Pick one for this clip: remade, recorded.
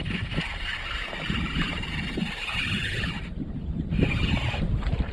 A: remade